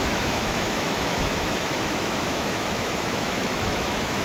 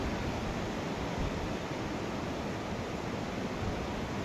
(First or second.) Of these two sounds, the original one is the second